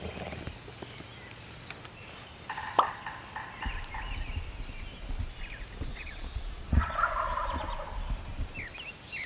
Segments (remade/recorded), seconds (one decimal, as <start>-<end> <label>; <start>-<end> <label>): 0.0-5.9 recorded; 5.9-7.1 remade; 7.1-9.3 recorded